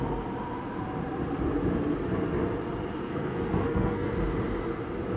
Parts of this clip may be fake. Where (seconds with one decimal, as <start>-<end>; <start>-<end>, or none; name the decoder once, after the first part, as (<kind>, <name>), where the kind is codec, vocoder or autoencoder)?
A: 3.0-4.1 (codec, SNAC)